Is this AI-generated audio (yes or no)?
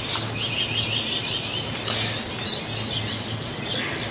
no